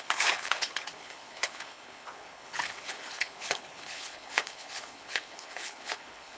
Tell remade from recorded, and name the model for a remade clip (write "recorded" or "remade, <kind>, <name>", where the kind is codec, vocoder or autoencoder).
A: remade, codec, HILCodec